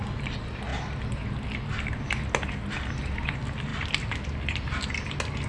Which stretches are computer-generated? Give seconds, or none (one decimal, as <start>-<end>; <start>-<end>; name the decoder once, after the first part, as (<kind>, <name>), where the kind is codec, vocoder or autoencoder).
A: none